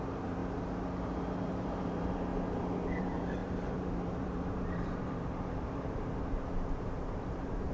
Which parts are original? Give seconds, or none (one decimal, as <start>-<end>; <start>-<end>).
0.4-1.5; 2.3-3.0